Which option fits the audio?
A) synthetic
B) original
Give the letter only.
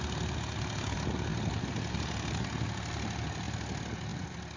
B